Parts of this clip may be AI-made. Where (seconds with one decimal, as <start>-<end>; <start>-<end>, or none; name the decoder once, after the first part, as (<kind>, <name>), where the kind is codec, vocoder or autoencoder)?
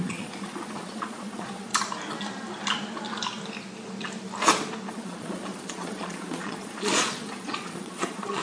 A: 0.0-1.7 (vocoder, Vocos); 4.9-8.4